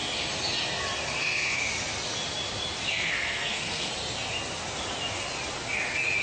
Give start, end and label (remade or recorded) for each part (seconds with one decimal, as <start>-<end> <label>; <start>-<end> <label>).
0.0-1.2 recorded; 1.2-1.6 remade; 1.6-2.9 recorded; 2.9-3.9 remade; 3.9-6.2 recorded